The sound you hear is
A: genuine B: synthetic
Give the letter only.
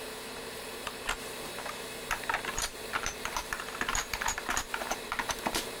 B